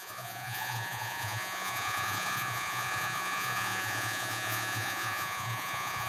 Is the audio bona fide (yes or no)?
no